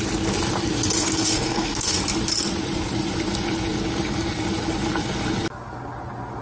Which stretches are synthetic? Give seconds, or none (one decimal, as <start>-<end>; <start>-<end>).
1.0-2.0